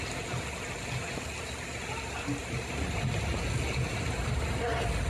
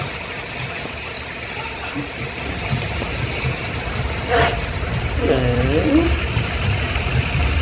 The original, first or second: first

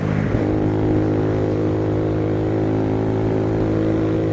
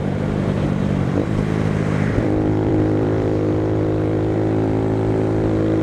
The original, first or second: first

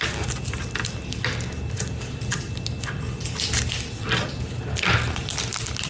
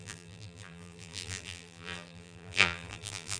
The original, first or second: first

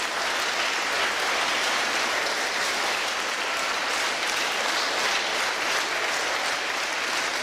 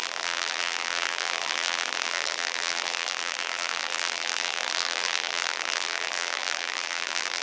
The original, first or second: first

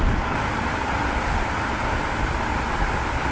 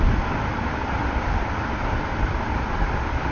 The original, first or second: first